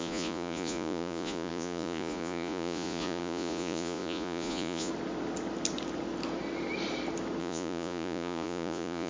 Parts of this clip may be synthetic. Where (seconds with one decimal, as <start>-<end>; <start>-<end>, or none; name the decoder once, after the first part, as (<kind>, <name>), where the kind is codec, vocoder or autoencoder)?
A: 0.0-4.9 (vocoder, Vocos); 7.4-9.1